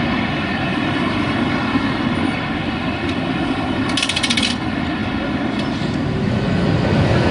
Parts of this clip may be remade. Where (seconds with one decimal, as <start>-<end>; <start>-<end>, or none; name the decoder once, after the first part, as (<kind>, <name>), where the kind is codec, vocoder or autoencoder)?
0.7-1.5 (vocoder, BigVGAN v2); 5.0-6.3